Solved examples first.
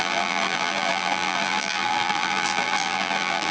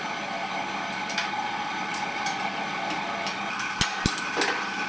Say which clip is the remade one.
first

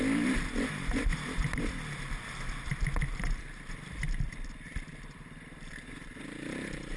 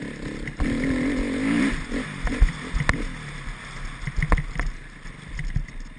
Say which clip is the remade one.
first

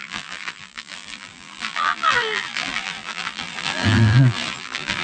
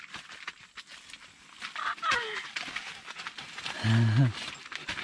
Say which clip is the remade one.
first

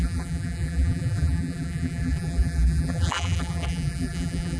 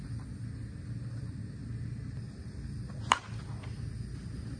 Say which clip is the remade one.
first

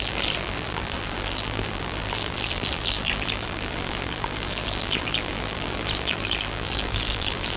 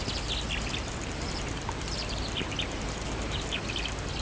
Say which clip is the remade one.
first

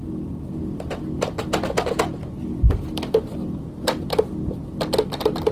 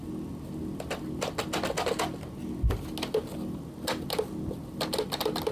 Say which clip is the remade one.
first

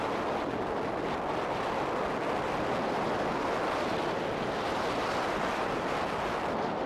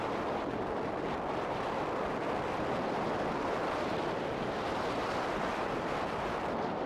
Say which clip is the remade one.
second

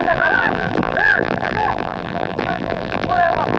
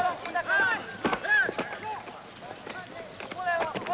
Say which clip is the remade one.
first